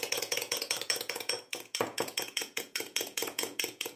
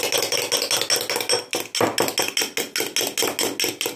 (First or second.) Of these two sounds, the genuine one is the second